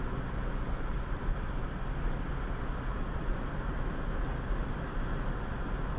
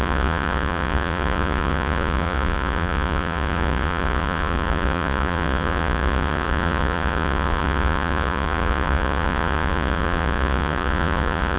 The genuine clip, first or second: first